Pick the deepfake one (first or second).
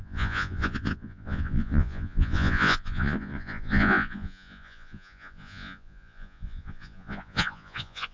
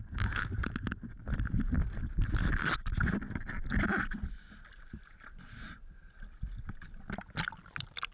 first